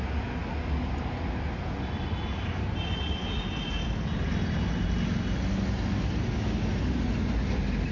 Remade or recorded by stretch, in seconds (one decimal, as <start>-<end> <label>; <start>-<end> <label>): 0.0-7.9 recorded